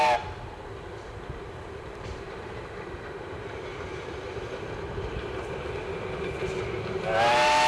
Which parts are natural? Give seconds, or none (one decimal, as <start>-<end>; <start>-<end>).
0.0-1.0; 2.9-7.7